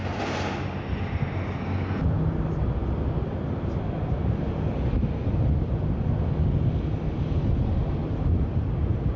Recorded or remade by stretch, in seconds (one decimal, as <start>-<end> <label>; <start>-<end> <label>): 0.0-8.0 recorded; 8.0-9.2 remade